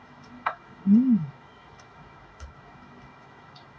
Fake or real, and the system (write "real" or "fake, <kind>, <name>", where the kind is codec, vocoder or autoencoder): fake, autoencoder, DAC-VAE